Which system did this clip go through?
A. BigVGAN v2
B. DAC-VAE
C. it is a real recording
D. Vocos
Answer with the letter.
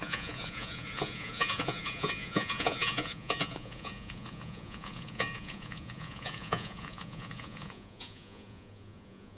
D